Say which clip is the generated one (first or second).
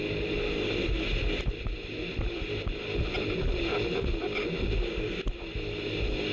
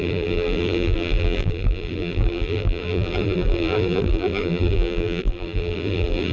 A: second